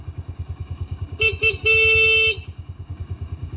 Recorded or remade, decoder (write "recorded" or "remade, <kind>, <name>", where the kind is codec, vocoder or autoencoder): remade, codec, DAC